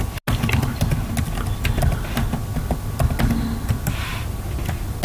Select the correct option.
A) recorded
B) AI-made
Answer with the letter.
A